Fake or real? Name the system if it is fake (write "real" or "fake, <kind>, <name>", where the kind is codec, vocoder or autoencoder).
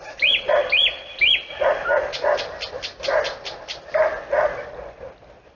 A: real